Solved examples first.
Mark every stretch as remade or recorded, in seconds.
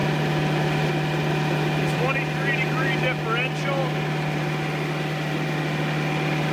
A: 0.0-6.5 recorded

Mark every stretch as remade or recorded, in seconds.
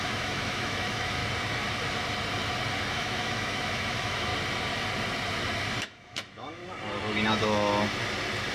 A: 0.0-1.2 remade; 1.2-2.9 recorded; 2.9-4.3 remade; 4.3-5.8 recorded; 5.8-6.6 remade; 6.6-7.3 recorded; 7.3-7.7 remade; 7.7-8.5 recorded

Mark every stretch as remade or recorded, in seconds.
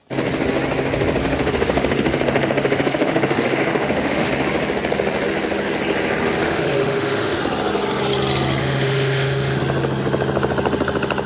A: 0.0-1.2 recorded; 1.2-4.3 remade; 4.3-6.4 recorded; 6.4-7.4 remade; 7.4-8.6 recorded; 8.6-9.6 remade; 9.6-11.3 recorded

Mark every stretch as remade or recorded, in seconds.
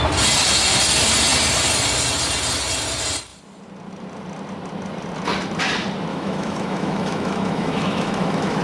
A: 0.0-6.1 recorded; 6.1-8.6 remade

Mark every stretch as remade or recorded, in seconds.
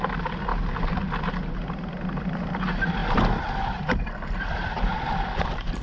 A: 0.0-5.8 recorded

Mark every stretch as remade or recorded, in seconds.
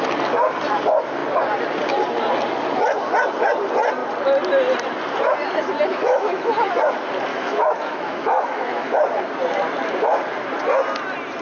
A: 0.0-5.9 recorded; 5.9-6.5 remade; 6.5-7.3 recorded; 7.3-8.9 remade; 8.9-11.4 recorded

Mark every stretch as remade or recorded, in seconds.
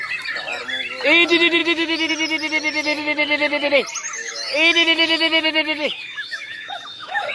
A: 0.0-1.6 recorded; 1.6-2.1 remade; 2.1-4.2 recorded; 4.2-7.3 remade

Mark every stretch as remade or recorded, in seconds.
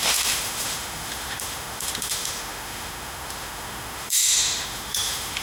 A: 0.0-5.4 remade